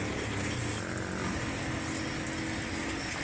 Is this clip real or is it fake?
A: real